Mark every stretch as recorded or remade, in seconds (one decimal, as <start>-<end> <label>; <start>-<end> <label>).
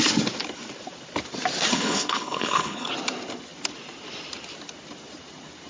0.0-1.7 recorded; 1.7-2.9 remade; 2.9-5.7 recorded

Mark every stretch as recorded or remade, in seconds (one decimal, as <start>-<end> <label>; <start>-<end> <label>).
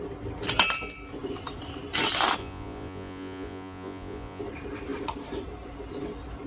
0.0-2.4 recorded; 2.4-4.4 remade; 4.4-6.5 recorded